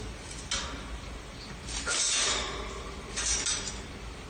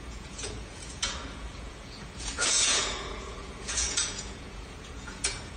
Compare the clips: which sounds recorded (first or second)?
first